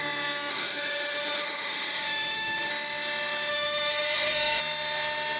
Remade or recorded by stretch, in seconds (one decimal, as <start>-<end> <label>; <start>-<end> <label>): 0.0-0.5 recorded; 0.5-2.7 remade; 2.7-3.5 recorded; 3.5-4.6 remade; 4.6-5.4 recorded